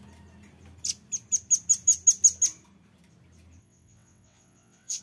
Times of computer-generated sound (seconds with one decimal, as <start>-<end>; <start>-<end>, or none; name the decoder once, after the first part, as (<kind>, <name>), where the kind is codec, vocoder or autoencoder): 3.6-5.0 (vocoder, WaveNeXt)

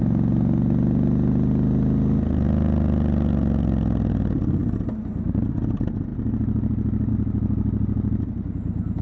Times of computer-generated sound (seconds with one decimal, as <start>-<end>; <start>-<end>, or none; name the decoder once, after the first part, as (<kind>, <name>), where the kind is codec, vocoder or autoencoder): none